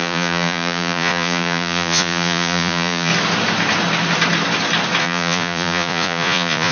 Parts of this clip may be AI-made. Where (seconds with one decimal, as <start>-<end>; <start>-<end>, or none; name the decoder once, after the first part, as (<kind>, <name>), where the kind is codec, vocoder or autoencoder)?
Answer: 0.0-3.1 (vocoder, Vocos); 5.0-6.7